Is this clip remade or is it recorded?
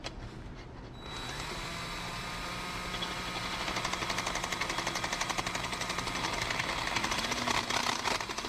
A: recorded